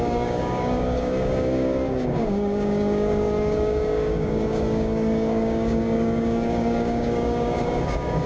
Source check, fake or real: fake